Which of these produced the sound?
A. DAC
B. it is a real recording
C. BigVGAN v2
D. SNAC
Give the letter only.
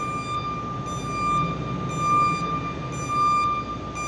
B